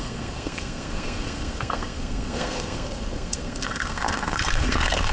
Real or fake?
fake